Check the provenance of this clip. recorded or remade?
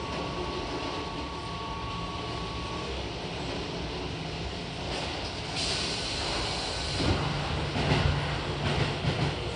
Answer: recorded